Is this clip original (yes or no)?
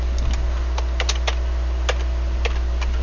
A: yes